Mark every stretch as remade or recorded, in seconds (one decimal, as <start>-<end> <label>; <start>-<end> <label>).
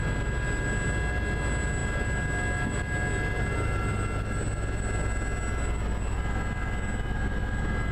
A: 0.0-7.9 recorded